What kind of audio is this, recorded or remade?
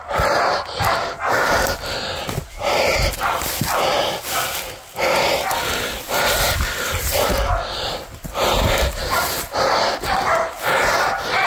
recorded